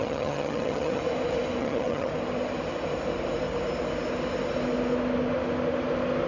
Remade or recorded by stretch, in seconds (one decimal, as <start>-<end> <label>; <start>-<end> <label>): 0.0-1.0 remade; 1.0-1.6 recorded; 1.6-2.1 remade; 2.1-6.3 recorded